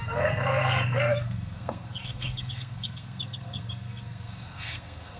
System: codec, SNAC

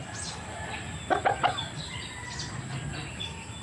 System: none